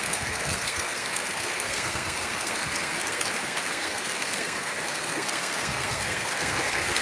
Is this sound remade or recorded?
remade